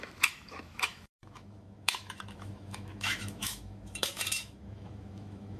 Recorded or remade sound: remade